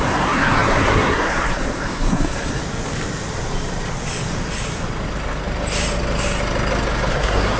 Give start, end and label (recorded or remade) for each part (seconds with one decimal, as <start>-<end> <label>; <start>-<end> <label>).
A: 0.0-2.6 remade; 2.6-7.1 recorded; 7.1-7.6 remade